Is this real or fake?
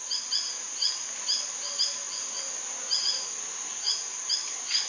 real